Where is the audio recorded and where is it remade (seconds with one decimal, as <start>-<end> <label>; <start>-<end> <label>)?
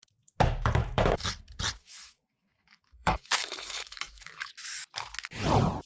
0.0-0.8 recorded; 0.8-1.3 remade; 1.3-1.8 recorded; 1.8-4.5 remade; 4.5-5.9 recorded